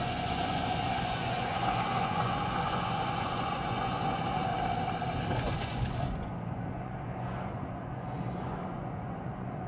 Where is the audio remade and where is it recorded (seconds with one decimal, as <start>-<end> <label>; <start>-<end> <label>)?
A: 0.0-4.5 remade; 4.5-5.4 recorded; 5.4-9.7 remade